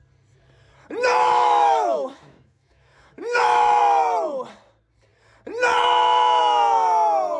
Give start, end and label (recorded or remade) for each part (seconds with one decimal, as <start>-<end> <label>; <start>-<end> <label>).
0.0-1.1 recorded; 1.1-3.8 remade; 3.8-7.4 recorded